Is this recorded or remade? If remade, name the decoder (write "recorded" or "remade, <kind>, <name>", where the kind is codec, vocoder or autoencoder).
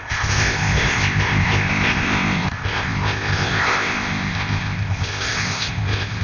remade, codec, ZipCodec